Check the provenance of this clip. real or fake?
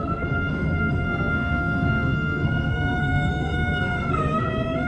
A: fake